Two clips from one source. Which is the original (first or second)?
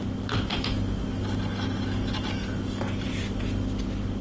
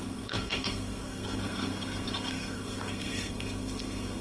first